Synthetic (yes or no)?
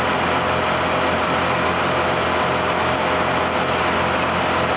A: no